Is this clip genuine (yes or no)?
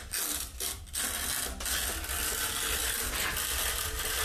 yes